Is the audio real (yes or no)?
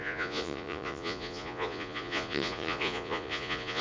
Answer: no